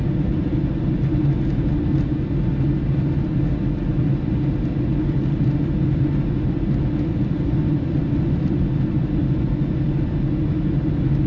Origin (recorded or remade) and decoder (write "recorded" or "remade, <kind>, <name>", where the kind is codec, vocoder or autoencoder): recorded